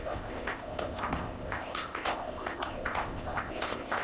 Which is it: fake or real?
fake